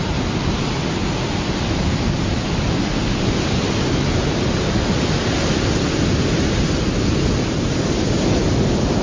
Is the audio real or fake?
real